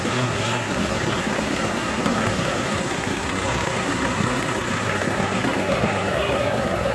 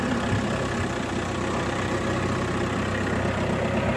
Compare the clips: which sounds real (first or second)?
second